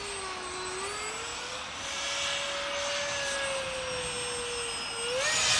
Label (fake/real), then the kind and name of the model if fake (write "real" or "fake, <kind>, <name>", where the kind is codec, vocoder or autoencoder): real